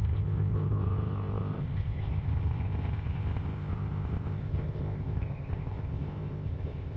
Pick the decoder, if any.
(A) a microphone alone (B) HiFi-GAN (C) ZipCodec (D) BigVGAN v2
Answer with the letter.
C